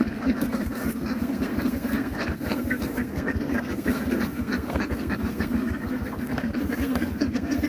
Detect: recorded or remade remade